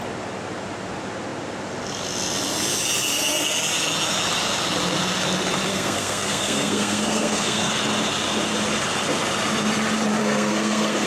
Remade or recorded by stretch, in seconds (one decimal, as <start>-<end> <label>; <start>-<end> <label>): 0.0-5.7 recorded; 5.7-7.7 remade; 7.7-10.2 recorded; 10.2-11.1 remade